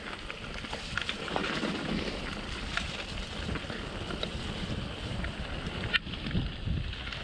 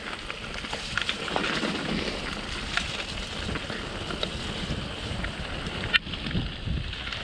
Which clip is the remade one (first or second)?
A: first